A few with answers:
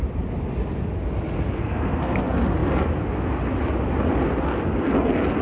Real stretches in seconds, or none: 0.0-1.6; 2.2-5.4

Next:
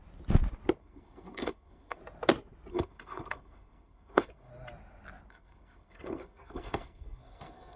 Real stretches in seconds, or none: 0.0-0.8; 2.0-2.7; 4.5-5.3